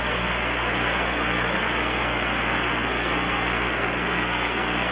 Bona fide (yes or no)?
no